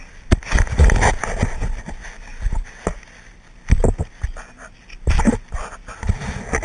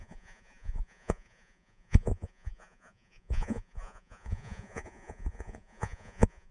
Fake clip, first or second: second